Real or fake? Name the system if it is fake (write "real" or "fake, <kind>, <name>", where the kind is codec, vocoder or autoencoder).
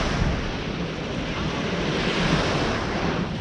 real